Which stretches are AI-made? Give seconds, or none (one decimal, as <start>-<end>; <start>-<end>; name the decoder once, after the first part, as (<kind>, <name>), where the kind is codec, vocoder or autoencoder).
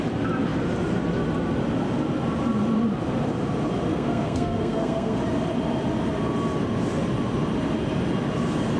3.9-5.2 (codec, SNAC)